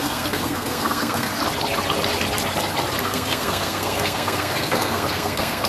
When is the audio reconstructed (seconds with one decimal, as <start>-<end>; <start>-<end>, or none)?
0.0-1.3; 3.0-5.7